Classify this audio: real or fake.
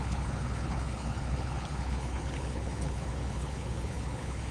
fake